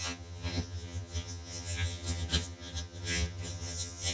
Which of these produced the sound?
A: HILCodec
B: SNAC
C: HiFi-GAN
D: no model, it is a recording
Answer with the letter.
C